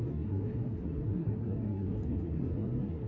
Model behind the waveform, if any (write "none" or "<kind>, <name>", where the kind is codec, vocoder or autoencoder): codec, SNAC